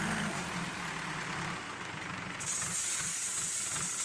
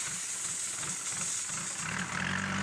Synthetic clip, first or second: first